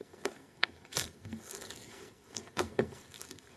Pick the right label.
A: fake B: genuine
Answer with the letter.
A